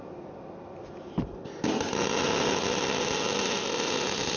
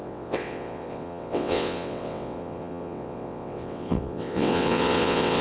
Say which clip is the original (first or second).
first